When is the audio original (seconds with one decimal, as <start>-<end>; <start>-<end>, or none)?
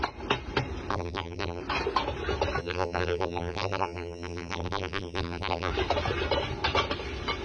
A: 0.0-0.9; 1.6-2.6; 5.7-7.4